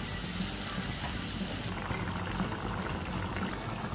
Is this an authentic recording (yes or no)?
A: yes